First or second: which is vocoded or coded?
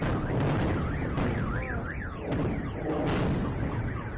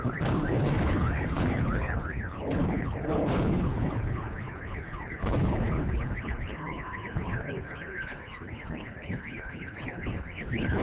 second